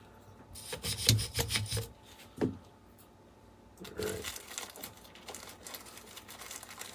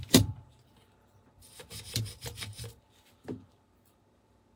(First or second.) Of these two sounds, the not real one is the second